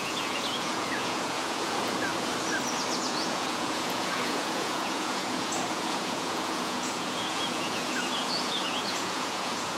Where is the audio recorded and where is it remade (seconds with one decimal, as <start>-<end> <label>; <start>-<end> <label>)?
0.0-2.1 remade; 2.1-3.0 recorded; 3.0-9.8 remade